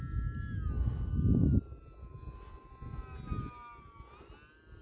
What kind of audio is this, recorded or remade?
recorded